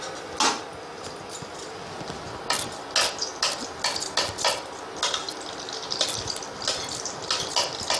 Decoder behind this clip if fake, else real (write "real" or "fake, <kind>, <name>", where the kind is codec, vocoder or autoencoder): real